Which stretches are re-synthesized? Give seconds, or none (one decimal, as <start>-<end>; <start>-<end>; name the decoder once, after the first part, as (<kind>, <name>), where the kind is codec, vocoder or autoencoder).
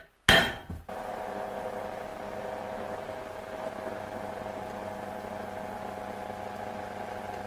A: 0.6-1.2 (vocoder, BigVGAN v2)